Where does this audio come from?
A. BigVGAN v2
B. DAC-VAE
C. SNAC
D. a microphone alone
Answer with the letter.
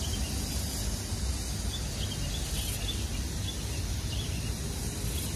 D